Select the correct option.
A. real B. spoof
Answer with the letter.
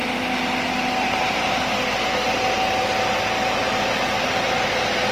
A